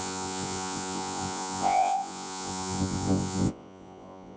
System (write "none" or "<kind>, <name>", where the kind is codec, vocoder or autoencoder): vocoder, Vocos